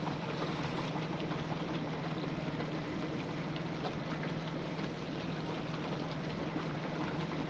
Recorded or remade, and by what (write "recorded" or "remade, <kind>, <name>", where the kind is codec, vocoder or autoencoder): remade, vocoder, BigVGAN v2